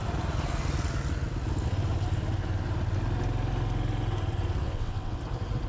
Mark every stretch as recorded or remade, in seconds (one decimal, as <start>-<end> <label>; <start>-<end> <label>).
0.0-4.6 recorded; 4.6-5.2 remade; 5.2-5.7 recorded